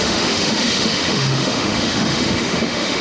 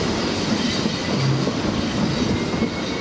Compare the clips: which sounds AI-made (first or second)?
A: first